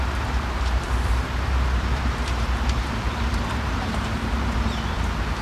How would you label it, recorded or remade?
remade